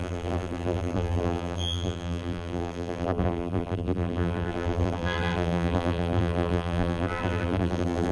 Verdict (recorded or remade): remade